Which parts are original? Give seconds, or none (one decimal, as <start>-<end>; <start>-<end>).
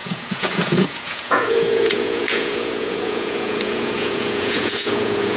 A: none